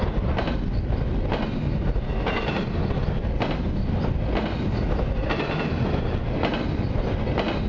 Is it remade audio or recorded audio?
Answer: recorded